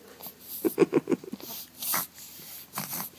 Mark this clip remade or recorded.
remade